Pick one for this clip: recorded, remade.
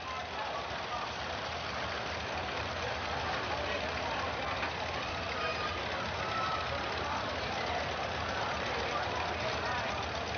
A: recorded